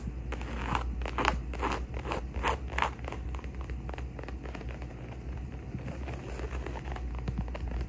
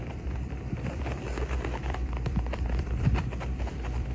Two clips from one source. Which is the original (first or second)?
first